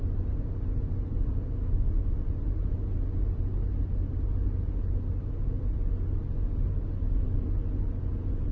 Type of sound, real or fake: real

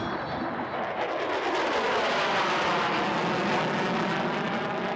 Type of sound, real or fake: real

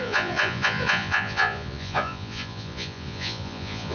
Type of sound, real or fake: fake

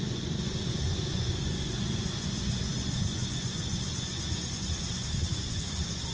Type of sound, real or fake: fake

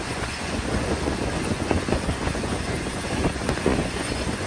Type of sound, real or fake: fake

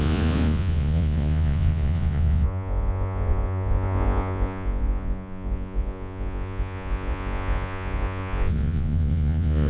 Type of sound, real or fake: fake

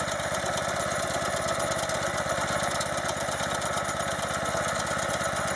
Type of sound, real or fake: real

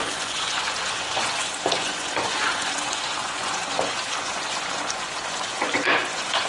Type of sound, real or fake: fake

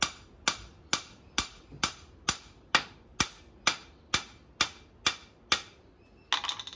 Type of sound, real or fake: real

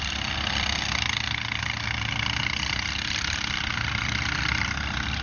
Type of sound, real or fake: real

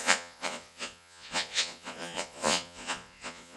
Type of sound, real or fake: fake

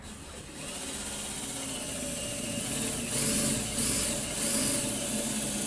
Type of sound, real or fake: real